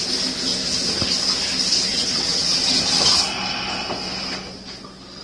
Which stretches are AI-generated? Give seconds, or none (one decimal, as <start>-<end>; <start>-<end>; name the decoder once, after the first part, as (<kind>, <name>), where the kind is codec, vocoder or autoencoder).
1.9-2.8 (vocoder, WaveNeXt)